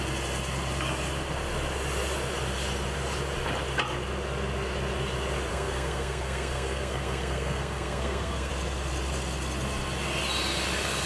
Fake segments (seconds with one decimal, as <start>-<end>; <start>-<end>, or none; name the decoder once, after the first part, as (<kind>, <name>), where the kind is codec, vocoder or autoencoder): 5.5-8.5 (codec, SNAC)